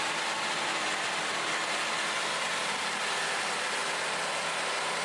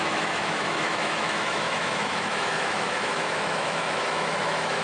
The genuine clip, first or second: first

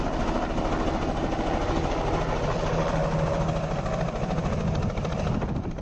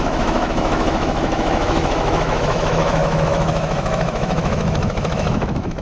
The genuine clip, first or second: first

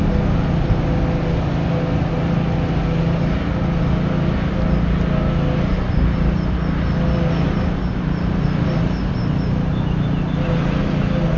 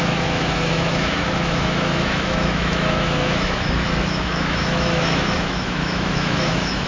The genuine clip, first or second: first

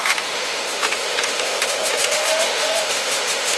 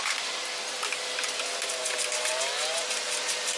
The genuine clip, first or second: second